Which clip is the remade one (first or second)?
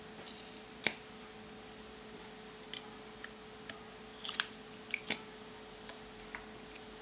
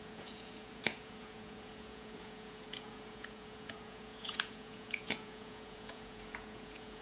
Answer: second